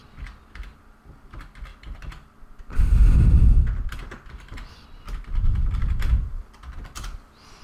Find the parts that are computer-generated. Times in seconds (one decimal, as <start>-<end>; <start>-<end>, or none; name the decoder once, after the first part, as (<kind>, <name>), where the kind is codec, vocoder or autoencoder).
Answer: 0.0-7.6 (vocoder, BigVGAN v2)